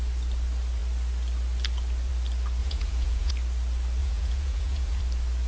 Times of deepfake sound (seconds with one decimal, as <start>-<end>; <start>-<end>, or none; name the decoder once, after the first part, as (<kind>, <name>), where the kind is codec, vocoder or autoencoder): 2.6-3.3 (vocoder, Vocos); 4.0-5.0